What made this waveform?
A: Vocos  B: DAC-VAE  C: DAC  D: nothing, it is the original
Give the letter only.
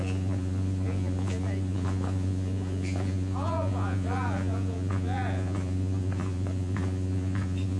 A